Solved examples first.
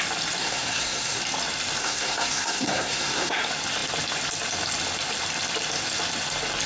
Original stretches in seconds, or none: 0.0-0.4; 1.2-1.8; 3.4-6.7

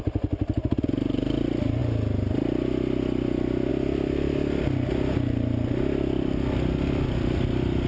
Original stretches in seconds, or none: 0.0-7.9

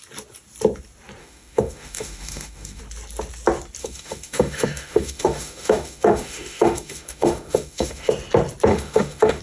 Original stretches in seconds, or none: 0.0-1.2; 2.8-3.8; 8.1-8.7

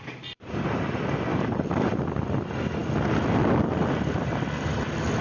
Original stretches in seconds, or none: 0.0-1.3; 2.0-5.2

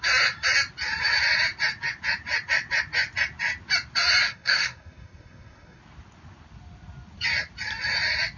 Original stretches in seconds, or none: 0.0-4.3; 5.8-8.4

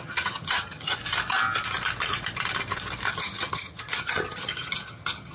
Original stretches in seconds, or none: 1.0-3.1